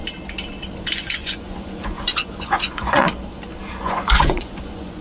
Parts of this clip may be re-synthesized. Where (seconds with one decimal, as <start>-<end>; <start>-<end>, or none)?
0.8-3.1; 3.8-5.0